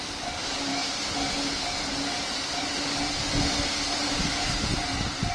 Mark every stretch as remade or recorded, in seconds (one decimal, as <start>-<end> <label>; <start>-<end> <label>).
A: 0.0-5.3 recorded